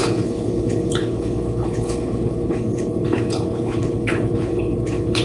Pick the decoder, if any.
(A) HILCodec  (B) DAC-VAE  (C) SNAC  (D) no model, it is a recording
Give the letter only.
A